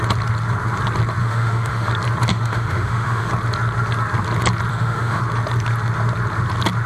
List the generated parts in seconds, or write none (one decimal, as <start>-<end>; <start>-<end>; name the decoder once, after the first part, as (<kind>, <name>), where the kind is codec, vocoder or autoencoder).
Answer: 1.2-1.9 (autoencoder, DAC-VAE); 2.3-3.3; 4.7-5.2